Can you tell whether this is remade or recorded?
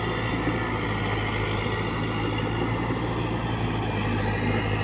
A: recorded